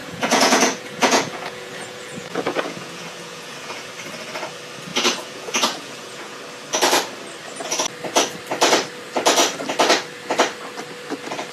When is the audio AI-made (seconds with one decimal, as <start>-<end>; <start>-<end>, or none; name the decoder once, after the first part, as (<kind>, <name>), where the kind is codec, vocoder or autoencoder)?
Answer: 0.0-3.9 (vocoder, Vocos); 4.9-6.4